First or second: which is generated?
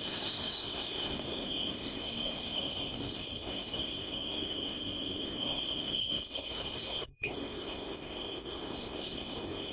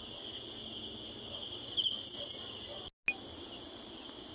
first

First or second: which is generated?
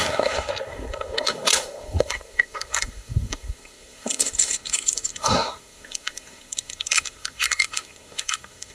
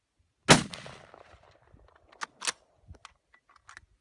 first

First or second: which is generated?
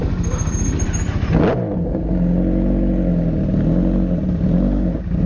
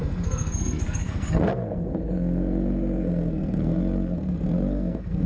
second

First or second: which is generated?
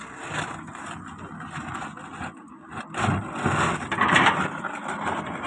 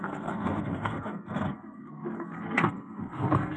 second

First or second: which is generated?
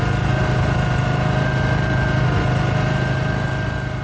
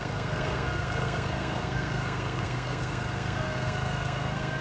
second